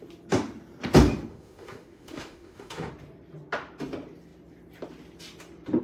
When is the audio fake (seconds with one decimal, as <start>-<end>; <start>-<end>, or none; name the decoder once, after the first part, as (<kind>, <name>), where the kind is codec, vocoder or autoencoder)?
1.3-2.9 (autoencoder, DAC-VAE)

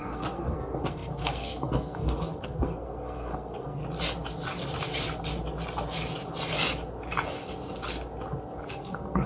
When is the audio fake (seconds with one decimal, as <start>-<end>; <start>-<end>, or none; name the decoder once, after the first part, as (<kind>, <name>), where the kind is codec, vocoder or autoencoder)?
0.0-3.8 (codec, SNAC); 8.7-9.3

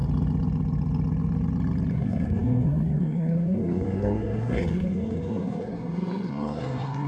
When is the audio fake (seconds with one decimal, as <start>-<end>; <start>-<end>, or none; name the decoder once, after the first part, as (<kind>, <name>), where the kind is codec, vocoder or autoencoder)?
1.9-7.1 (codec, SNAC)

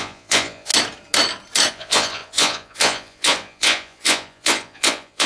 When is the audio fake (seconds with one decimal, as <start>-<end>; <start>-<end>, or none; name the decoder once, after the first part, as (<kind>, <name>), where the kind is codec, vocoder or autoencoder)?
0.0-0.7 (vocoder, Vocos); 1.7-5.3

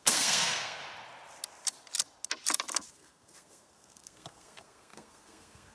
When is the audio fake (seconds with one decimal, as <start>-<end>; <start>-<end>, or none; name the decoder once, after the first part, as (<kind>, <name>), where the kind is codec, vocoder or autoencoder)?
0.0-0.8 (codec, SNAC); 2.9-5.7